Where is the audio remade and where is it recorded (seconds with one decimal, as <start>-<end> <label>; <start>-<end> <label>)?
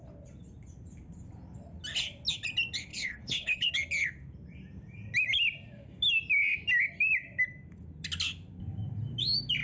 0.0-2.9 recorded; 2.9-3.7 remade; 3.7-9.6 recorded